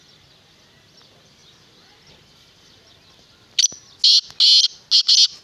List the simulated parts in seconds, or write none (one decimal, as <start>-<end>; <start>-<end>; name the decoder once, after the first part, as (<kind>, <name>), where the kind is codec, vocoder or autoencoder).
none